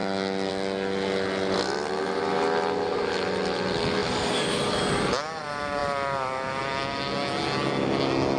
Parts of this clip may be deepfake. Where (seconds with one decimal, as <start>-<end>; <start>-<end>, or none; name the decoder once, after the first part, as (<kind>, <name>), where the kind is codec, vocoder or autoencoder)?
4.0-5.1 (vocoder, BigVGAN v2)